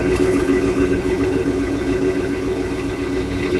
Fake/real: fake